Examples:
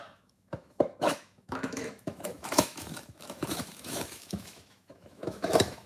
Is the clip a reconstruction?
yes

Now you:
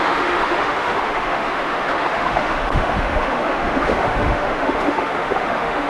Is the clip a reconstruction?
yes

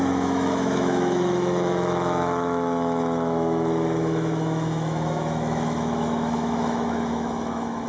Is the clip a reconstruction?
yes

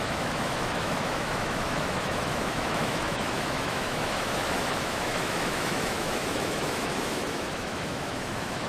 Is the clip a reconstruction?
yes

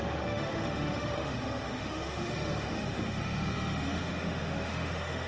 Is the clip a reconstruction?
yes